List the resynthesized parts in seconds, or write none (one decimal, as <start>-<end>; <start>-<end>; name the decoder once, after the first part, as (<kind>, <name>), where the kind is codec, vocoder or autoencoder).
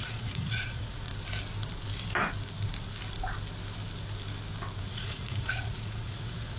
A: 0.0-1.1 (vocoder, Vocos); 4.8-6.6